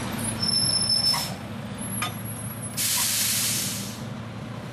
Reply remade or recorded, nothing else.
recorded